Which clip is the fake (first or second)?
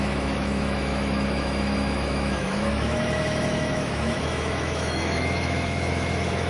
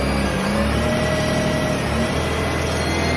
first